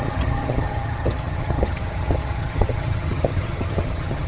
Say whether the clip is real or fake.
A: fake